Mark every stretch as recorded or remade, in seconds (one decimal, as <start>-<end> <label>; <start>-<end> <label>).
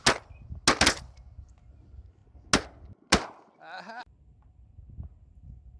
0.0-5.8 recorded